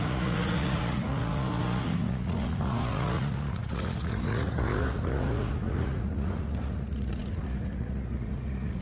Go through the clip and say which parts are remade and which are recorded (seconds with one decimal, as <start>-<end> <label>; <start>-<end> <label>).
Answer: 0.0-8.8 remade